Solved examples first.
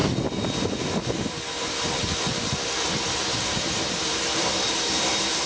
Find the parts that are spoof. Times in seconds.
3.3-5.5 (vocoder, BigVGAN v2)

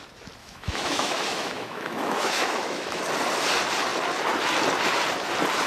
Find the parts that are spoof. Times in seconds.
0.4-3.0 (autoencoder, DAC-VAE)

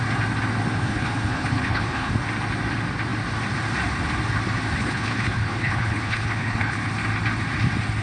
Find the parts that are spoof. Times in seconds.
0.8-2.1 (codec, HILCodec); 4.8-6.9

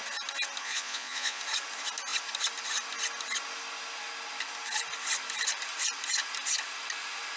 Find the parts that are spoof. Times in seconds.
0.6-1.4 (vocoder, Vocos)

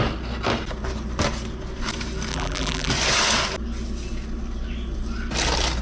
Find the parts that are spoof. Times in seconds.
2.3-2.9 (vocoder, BigVGAN v2)

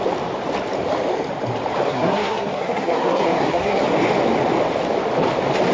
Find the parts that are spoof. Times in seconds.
1.9-3.8 (codec, SNAC)